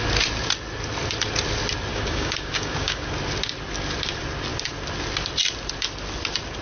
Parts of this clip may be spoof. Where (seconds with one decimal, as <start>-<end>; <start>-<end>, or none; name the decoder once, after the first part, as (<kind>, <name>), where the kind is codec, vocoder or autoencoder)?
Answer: 1.9-3.1 (codec, DAC)